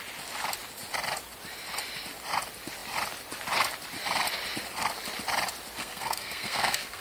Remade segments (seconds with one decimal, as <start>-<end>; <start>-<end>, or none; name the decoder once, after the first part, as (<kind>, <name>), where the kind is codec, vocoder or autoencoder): 5.8-7.0 (codec, SNAC)